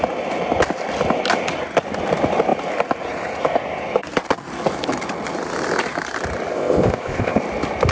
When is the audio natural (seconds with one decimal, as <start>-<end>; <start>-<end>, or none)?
0.0-6.5; 7.4-7.9